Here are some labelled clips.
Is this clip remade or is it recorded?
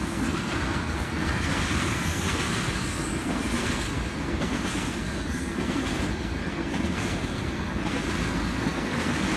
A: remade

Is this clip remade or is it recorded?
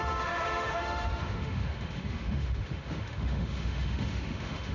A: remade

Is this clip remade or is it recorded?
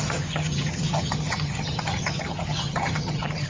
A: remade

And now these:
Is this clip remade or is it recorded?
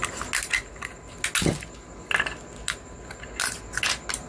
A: recorded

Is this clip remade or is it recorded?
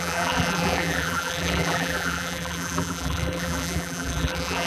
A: remade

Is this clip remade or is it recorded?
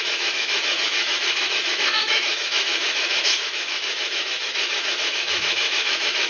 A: remade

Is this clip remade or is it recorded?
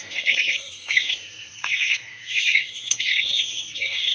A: remade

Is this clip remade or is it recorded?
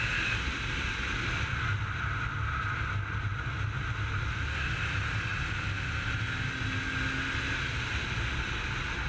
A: recorded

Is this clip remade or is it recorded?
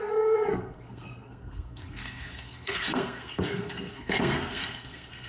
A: remade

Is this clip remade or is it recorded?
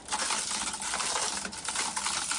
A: recorded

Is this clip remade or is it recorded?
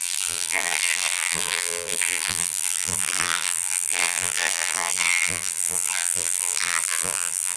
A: remade